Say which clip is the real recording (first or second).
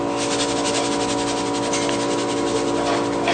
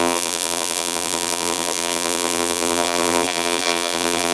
first